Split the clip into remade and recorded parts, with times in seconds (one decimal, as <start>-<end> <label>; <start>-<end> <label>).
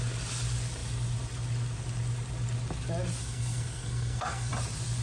0.0-3.2 recorded; 3.2-4.5 remade; 4.5-5.0 recorded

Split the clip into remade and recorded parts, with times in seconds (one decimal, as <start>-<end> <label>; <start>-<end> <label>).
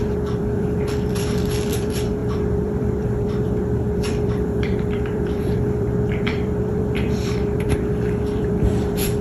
0.0-9.2 remade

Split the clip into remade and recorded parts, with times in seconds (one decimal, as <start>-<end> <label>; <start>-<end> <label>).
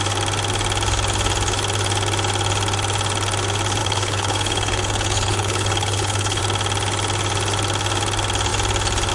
0.0-3.8 recorded; 3.8-6.4 remade; 6.4-9.1 recorded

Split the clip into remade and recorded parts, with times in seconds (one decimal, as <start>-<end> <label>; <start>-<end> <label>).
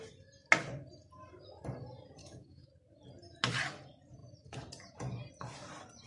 0.0-2.2 recorded; 2.2-2.7 remade; 2.7-6.1 recorded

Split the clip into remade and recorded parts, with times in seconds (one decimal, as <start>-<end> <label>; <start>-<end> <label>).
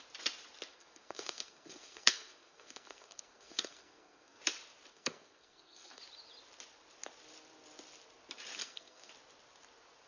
0.0-0.7 recorded; 0.7-4.4 remade; 4.4-4.9 recorded; 4.9-6.0 remade; 6.0-8.6 recorded; 8.6-9.1 remade; 9.1-10.1 recorded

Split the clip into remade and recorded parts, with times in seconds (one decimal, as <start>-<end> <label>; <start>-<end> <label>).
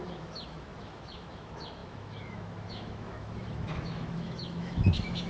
0.0-5.3 remade